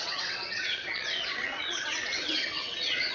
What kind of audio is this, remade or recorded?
remade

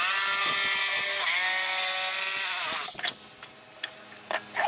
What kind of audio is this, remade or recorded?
recorded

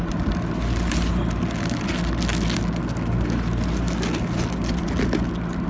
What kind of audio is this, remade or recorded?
recorded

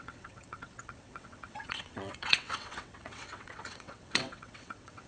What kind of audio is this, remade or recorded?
remade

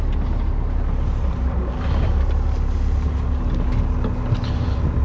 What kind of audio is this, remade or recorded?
recorded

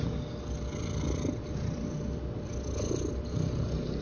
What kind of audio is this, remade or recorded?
recorded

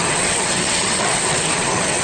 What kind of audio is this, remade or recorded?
remade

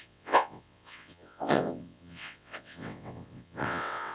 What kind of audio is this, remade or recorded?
remade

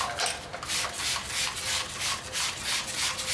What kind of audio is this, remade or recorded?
recorded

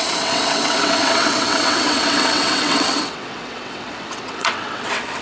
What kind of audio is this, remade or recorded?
remade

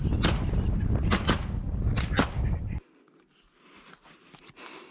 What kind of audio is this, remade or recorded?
recorded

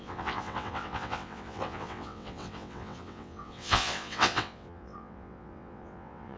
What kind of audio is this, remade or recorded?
remade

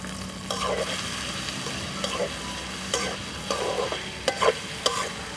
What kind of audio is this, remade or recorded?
recorded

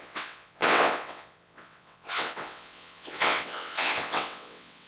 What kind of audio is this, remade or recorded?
remade